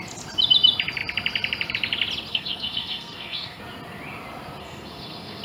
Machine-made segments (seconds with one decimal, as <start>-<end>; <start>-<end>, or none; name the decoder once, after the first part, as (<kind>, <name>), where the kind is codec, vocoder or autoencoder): 2.3-3.6 (codec, SNAC); 4.6-5.4